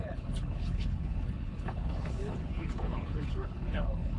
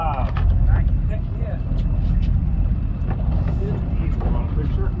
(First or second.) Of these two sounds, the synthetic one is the first